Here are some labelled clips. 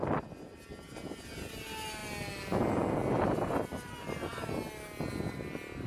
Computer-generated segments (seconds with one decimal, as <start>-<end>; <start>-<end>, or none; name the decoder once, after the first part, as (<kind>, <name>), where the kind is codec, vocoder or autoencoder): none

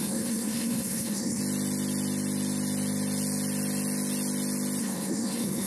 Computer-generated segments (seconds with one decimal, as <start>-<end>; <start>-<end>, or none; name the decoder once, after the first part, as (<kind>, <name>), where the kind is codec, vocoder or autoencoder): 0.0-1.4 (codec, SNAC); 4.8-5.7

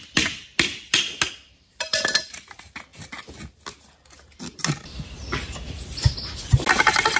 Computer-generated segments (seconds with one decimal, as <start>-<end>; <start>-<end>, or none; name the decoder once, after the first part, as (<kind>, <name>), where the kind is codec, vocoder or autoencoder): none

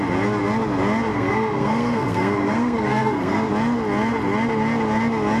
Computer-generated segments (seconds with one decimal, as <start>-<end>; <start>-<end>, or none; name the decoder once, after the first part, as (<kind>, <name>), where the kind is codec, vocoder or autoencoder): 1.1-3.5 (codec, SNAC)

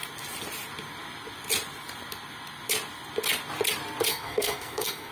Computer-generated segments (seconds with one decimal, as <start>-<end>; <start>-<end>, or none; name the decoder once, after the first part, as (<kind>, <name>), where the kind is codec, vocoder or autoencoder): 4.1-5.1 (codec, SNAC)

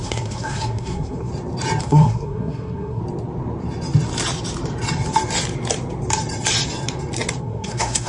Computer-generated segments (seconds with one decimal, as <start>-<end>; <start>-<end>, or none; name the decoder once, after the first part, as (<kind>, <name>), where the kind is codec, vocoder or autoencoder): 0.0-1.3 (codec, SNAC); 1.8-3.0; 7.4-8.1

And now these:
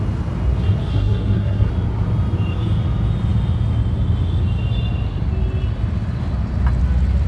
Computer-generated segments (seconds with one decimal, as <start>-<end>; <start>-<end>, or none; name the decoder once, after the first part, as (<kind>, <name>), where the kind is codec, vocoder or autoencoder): 0.9-1.7 (codec, SNAC)

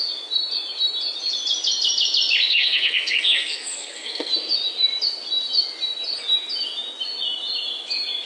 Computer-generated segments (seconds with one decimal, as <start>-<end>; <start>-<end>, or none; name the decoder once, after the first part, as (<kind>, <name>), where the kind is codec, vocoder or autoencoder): 2.5-4.3 (codec, SNAC)